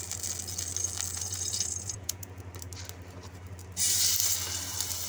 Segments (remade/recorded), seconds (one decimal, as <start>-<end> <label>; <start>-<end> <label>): 0.0-1.1 recorded; 1.1-2.4 remade; 2.4-5.1 recorded

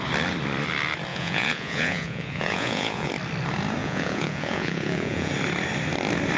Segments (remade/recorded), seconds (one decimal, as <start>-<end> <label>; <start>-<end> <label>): 0.0-1.1 recorded; 1.1-3.1 remade; 3.1-3.8 recorded; 3.8-5.3 remade; 5.3-6.4 recorded

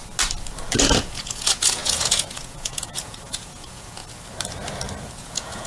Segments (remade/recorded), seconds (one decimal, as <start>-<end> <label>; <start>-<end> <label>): 0.0-1.0 recorded; 1.0-4.0 remade; 4.0-5.2 recorded; 5.2-5.7 remade

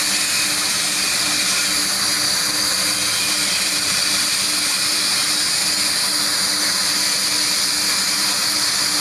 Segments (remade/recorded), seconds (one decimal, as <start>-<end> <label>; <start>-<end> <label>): 0.0-9.0 recorded

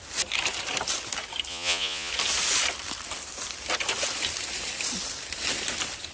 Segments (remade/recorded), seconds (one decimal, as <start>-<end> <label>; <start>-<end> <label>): 0.0-1.5 recorded; 1.5-2.1 remade; 2.1-6.1 recorded